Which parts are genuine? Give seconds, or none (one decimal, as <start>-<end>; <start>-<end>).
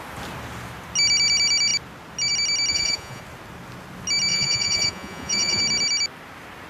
0.0-2.7; 3.2-4.3; 5.6-6.7